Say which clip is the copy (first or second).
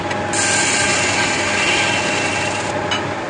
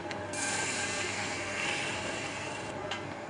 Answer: second